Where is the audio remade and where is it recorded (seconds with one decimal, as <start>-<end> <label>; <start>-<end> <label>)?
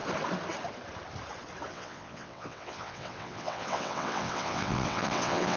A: 0.0-1.7 recorded; 1.7-5.6 remade